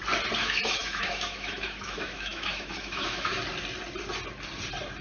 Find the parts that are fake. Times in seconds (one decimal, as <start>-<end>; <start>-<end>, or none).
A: 0.4-3.4

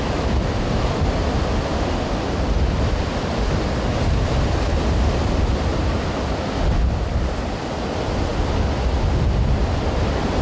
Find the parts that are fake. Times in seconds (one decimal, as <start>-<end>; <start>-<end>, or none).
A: none

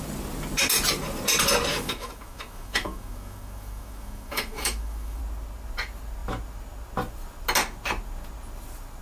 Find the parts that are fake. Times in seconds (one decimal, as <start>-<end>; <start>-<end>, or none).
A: 1.7-5.2

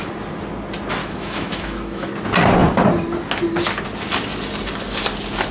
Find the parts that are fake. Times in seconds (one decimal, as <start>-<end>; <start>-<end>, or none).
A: 1.0-2.1

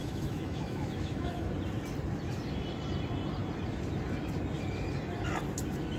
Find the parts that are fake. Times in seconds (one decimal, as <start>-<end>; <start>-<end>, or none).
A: 0.0-1.5